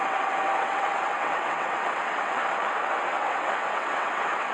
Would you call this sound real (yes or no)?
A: no